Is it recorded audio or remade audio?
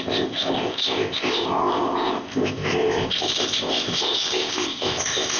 remade